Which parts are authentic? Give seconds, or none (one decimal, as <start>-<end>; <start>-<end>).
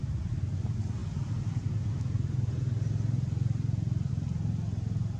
0.0-5.2